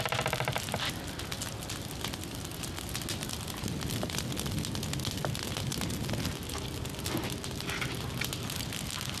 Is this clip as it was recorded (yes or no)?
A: yes